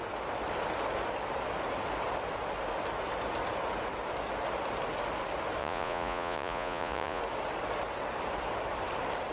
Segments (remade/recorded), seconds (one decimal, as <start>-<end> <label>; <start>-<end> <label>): 0.0-5.6 recorded; 5.6-7.2 remade; 7.2-9.3 recorded